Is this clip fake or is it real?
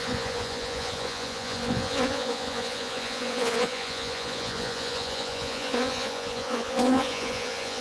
fake